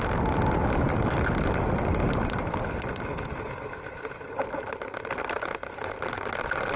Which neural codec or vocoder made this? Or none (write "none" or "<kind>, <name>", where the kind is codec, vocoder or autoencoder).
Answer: none